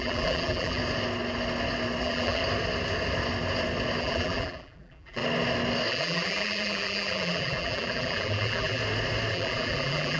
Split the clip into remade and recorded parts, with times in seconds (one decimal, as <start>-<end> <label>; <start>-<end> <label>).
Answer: 0.0-0.8 remade; 0.8-2.0 recorded; 2.0-2.4 remade; 2.4-4.0 recorded; 4.0-5.2 remade; 5.2-5.9 recorded; 5.9-8.8 remade; 8.8-9.3 recorded; 9.3-10.2 remade